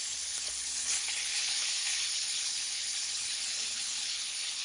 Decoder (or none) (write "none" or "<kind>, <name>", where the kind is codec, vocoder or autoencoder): codec, HILCodec